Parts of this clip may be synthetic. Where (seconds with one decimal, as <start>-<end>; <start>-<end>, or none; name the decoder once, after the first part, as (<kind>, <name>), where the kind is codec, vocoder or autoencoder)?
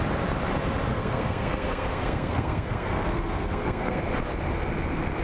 0.9-4.0 (codec, SNAC)